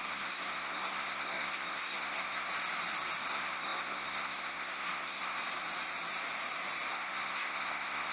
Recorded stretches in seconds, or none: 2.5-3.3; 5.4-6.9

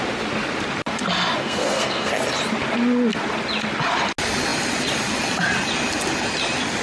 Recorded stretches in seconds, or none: 0.0-1.4; 2.1-6.8

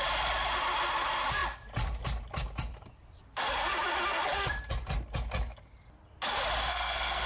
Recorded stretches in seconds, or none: 0.0-6.7

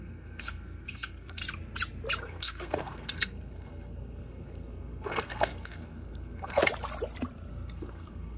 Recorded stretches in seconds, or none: 1.4-2.2; 6.6-7.5